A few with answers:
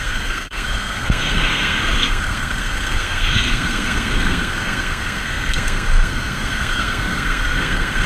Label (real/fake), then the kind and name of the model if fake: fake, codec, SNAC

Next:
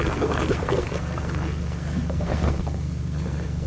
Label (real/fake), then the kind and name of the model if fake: fake, codec, SNAC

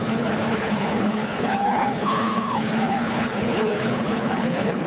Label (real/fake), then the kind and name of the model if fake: fake, codec, HILCodec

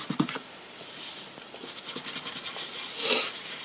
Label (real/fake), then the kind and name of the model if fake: real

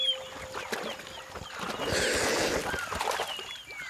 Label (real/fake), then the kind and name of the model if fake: real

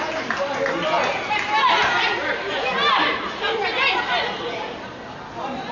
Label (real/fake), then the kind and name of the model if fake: real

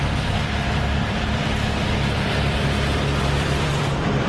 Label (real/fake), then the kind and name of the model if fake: fake, vocoder, BigVGAN v2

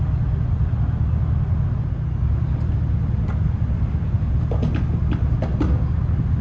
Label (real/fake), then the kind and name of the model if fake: real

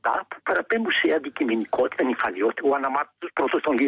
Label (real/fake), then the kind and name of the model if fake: real